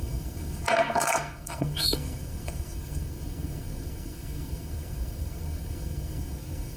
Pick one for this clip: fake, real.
fake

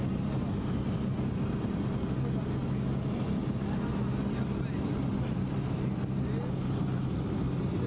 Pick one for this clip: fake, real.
real